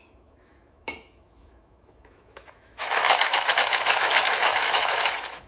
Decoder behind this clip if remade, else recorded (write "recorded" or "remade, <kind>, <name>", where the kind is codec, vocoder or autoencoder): remade, autoencoder, DAC-VAE